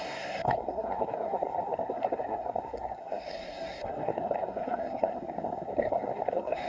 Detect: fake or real fake